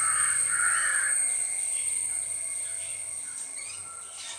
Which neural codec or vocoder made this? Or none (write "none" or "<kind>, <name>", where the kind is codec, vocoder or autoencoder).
none